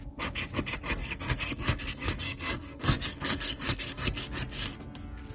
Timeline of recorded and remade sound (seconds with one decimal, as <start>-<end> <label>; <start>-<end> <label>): 0.0-1.0 recorded; 1.0-4.2 remade; 4.2-5.3 recorded

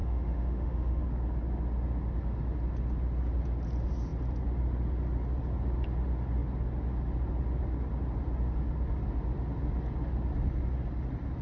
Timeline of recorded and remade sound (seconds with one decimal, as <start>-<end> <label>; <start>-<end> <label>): 0.0-1.0 remade; 1.0-11.4 recorded

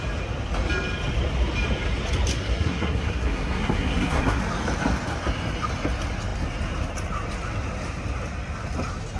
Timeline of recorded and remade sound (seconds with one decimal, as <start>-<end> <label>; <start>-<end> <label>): 0.0-2.3 recorded; 2.3-4.4 remade; 4.4-9.2 recorded

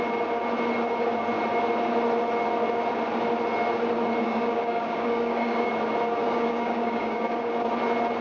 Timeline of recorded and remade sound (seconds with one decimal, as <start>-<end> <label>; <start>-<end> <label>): 0.0-4.2 recorded; 4.2-5.7 remade; 5.7-6.2 recorded; 6.2-7.4 remade; 7.4-8.2 recorded